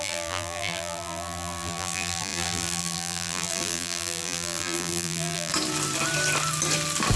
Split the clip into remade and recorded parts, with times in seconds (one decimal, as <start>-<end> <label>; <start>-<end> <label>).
0.0-5.5 remade; 5.5-7.2 recorded